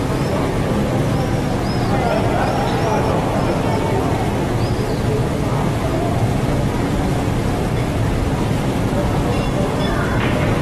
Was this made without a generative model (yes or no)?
yes